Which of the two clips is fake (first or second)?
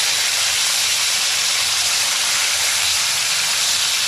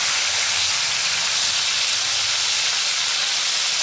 first